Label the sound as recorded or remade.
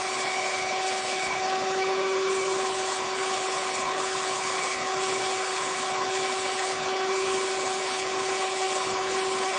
remade